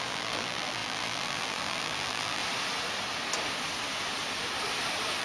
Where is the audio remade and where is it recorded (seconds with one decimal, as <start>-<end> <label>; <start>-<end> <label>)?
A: 0.0-2.4 remade; 2.4-5.2 recorded